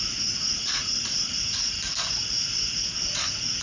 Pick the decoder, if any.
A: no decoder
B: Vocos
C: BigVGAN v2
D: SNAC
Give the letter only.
B